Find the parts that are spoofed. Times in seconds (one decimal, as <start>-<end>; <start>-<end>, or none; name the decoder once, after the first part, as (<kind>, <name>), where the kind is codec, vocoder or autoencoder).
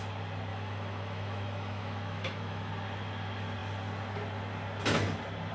0.5-2.7 (autoencoder, DAC-VAE)